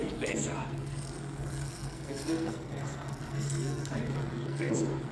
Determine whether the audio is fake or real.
fake